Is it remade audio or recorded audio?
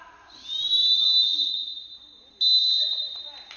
recorded